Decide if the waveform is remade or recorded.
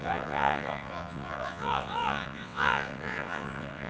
remade